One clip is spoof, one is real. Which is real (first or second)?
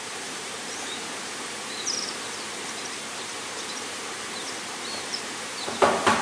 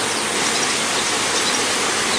second